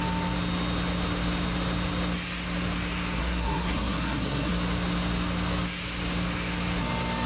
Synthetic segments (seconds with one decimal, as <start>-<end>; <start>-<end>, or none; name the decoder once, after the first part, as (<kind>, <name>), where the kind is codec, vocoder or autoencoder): 3.2-4.5 (codec, SNAC)